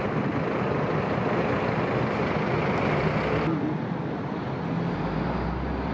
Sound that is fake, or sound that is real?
real